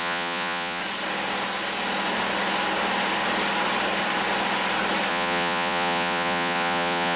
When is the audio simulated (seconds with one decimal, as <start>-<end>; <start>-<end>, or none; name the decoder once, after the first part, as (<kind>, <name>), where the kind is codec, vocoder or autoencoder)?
0.0-0.8 (vocoder, Vocos); 5.1-7.2